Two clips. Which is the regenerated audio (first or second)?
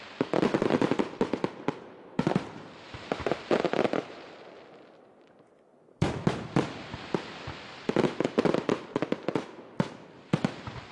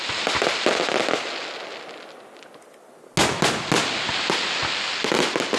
first